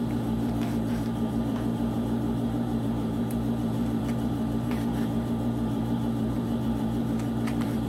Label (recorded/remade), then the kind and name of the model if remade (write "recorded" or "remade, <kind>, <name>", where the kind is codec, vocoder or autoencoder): remade, vocoder, BigVGAN v2